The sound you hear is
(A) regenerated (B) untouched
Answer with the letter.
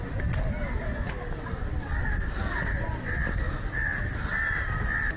B